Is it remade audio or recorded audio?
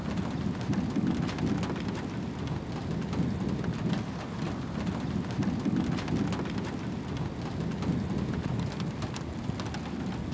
recorded